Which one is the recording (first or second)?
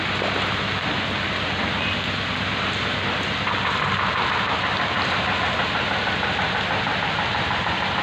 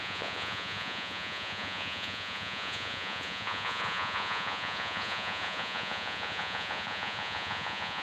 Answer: first